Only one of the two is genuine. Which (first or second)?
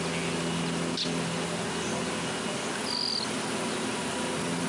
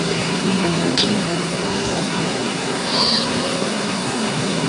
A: first